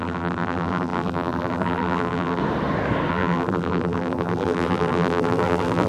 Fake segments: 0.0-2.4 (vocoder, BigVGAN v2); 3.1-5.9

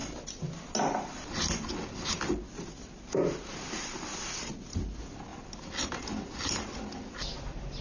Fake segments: none

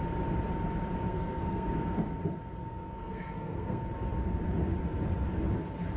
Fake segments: 1.1-1.7 (codec, SNAC); 2.6-3.8

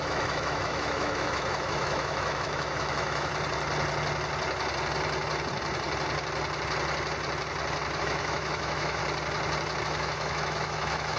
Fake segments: 0.0-3.3 (autoencoder, DAC-VAE); 8.0-9.0; 9.8-11.2

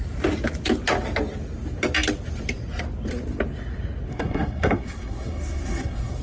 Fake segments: 4.1-6.2 (codec, SNAC)

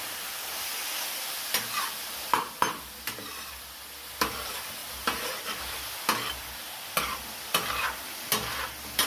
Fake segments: none

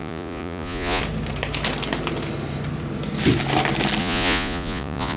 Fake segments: 0.0-1.0 (vocoder, Vocos); 4.0-5.2

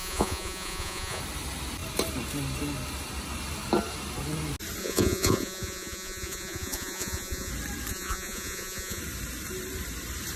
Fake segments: 0.0-1.2 (vocoder, Vocos); 4.8-7.5; 7.9-9.0